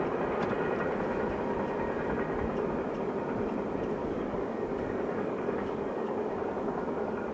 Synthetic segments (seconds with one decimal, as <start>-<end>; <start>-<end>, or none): 4.0-7.3